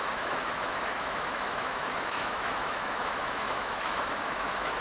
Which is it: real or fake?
fake